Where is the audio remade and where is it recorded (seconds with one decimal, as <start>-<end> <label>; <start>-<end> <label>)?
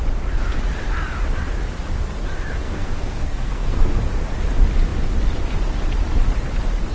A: 0.0-2.6 recorded; 2.6-4.0 remade; 4.0-6.9 recorded